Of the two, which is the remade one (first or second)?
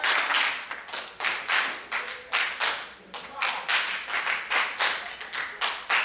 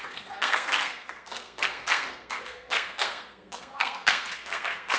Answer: second